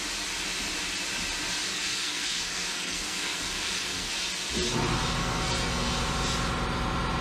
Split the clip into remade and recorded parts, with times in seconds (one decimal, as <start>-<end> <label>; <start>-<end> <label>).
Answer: 0.0-1.7 recorded; 1.7-4.1 remade; 4.1-5.2 recorded; 5.2-5.9 remade; 5.9-7.2 recorded